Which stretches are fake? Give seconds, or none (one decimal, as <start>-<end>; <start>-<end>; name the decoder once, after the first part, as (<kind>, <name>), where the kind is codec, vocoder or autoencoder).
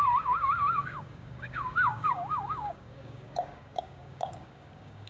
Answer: 0.0-5.1 (codec, DAC)